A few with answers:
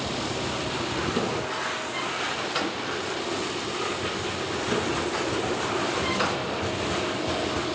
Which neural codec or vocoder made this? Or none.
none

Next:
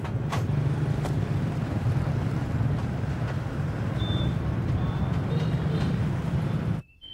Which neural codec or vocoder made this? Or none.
vocoder, BigVGAN v2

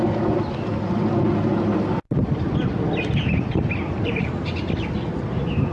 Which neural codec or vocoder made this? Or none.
none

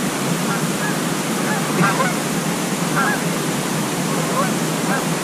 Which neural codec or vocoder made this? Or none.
vocoder, BigVGAN v2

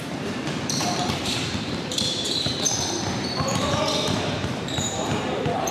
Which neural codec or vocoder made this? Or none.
vocoder, BigVGAN v2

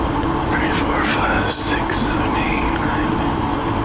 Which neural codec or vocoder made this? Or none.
none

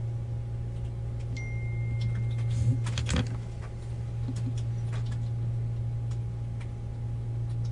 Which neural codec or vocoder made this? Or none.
none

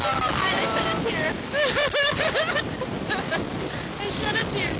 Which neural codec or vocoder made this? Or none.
none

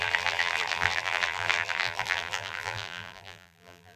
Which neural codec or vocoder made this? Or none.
vocoder, BigVGAN v2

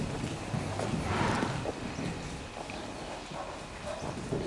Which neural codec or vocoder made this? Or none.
none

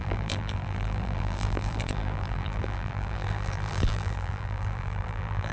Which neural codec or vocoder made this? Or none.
vocoder, BigVGAN v2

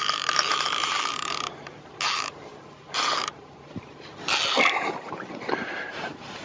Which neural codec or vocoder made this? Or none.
vocoder, BigVGAN v2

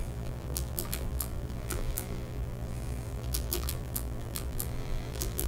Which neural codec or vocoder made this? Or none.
vocoder, BigVGAN v2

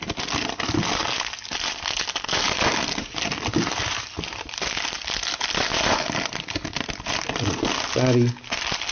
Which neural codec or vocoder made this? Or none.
none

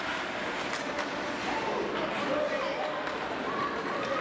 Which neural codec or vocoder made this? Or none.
none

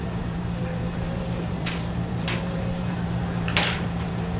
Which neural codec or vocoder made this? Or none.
vocoder, BigVGAN v2